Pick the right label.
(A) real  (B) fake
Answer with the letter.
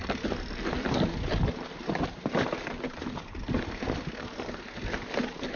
A